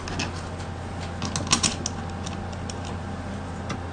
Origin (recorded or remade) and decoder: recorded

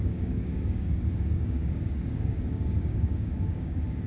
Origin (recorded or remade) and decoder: remade, codec, DAC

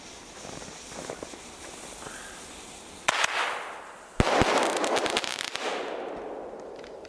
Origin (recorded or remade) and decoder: recorded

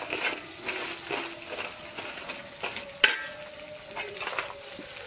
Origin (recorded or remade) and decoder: recorded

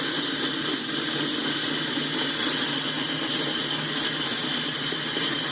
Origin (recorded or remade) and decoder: recorded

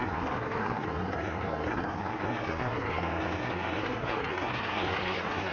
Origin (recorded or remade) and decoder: remade, codec, SNAC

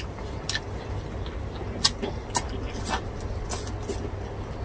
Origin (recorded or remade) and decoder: recorded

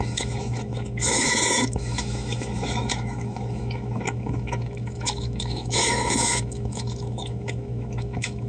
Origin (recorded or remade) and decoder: remade, autoencoder, DAC-VAE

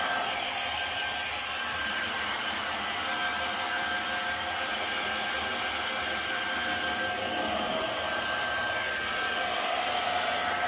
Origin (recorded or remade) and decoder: recorded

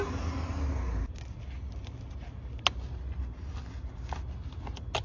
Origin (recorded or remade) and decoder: recorded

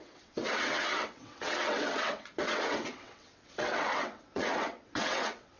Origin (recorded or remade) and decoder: remade, vocoder, WaveNeXt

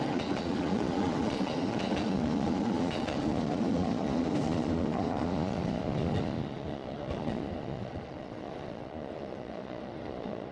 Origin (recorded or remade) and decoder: remade, vocoder, Vocos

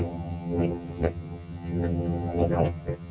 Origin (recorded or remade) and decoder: remade, vocoder, HiFi-GAN